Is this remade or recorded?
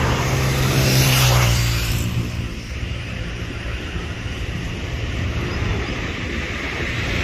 remade